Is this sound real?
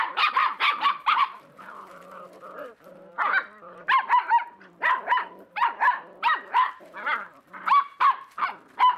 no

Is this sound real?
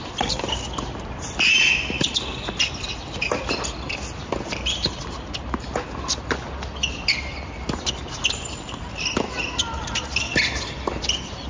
yes